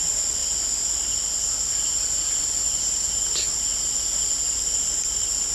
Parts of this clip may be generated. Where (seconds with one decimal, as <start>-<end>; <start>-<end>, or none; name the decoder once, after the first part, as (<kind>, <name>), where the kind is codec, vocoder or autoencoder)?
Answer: none